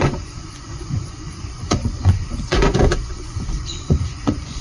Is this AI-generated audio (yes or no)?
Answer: yes